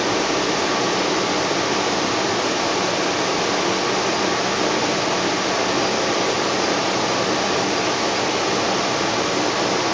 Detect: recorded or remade recorded